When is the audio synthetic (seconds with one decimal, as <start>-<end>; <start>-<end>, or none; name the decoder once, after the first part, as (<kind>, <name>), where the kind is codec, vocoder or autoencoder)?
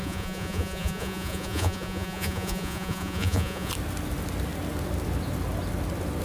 0.0-3.7 (vocoder, Vocos)